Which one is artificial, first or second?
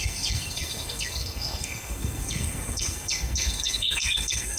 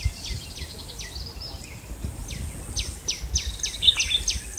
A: first